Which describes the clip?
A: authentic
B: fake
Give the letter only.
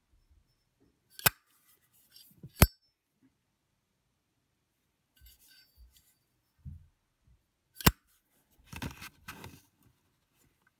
A